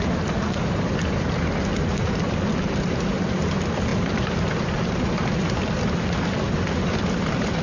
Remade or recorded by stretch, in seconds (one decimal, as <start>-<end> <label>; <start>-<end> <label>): 0.0-7.6 recorded